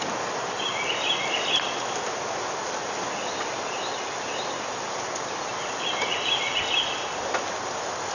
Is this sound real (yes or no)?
yes